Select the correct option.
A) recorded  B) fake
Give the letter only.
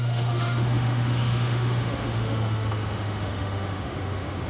B